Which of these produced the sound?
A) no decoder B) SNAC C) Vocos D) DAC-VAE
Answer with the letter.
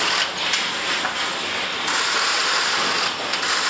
A